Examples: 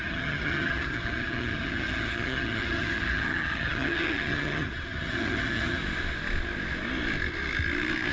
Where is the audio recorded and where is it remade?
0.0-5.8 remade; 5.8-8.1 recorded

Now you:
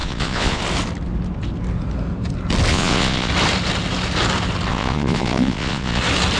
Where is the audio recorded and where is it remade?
0.0-0.6 remade; 0.6-2.7 recorded; 2.7-3.3 remade; 3.3-4.7 recorded; 4.7-6.0 remade; 6.0-6.4 recorded

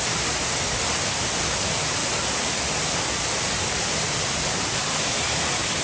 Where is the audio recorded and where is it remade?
0.0-5.8 recorded

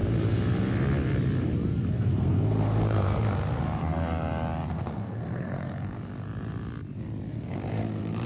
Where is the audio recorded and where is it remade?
0.0-1.9 recorded; 1.9-3.8 remade; 3.8-4.7 recorded; 4.7-6.1 remade; 6.1-7.3 recorded; 7.3-8.3 remade

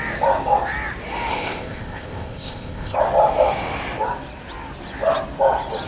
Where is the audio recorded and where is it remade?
0.0-1.3 recorded; 1.3-3.0 remade; 3.0-5.9 recorded

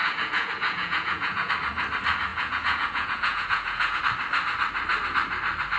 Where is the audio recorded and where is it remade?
0.0-1.5 remade; 1.5-2.3 recorded; 2.3-4.0 remade; 4.0-5.8 recorded

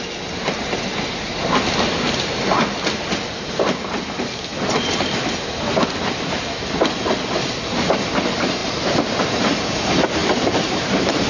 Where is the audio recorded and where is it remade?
0.0-8.6 recorded; 8.6-9.2 remade; 9.2-10.2 recorded; 10.2-11.3 remade

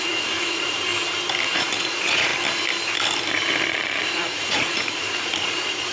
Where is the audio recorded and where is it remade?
0.0-0.9 remade; 0.9-1.5 recorded; 1.5-2.3 remade; 2.3-3.7 recorded; 3.7-5.9 remade